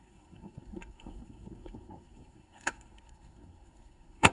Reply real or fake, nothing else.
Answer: fake